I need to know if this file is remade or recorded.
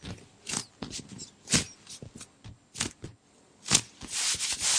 recorded